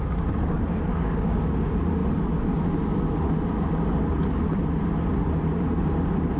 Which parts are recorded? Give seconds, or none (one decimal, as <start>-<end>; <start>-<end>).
0.0-0.9; 1.4-6.4